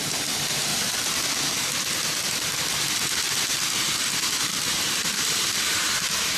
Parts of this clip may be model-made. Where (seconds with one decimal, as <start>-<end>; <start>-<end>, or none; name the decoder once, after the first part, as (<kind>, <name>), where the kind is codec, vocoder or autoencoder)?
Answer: 0.0-0.7 (vocoder, BigVGAN v2); 4.2-6.4